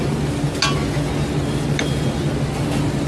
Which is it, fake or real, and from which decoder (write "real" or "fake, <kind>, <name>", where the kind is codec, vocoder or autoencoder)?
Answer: real